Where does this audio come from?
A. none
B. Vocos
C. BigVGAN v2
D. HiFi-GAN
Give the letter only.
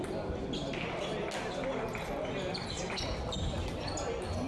A